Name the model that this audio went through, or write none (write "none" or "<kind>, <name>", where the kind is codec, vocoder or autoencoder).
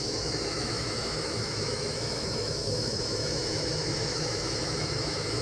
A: autoencoder, DAC-VAE